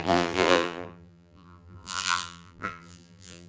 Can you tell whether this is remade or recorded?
remade